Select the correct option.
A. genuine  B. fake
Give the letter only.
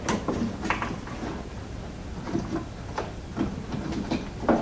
A